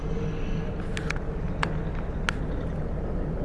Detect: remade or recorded recorded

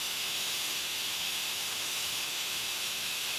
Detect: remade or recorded remade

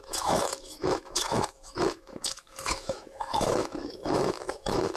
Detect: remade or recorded remade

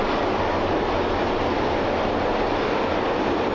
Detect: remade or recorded recorded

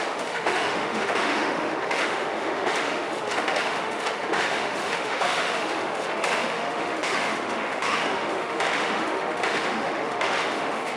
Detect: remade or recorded remade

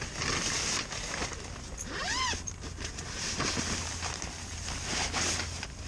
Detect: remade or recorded recorded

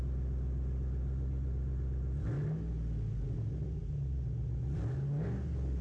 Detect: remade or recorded recorded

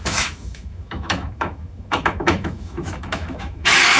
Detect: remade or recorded remade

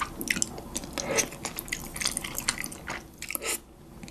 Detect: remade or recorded recorded